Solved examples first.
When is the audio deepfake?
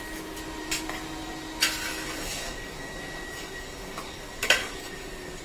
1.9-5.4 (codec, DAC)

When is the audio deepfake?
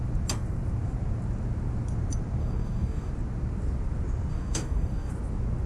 2.4-3.1 (codec, DAC); 4.3-5.1